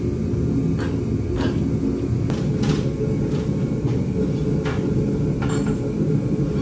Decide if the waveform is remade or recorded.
recorded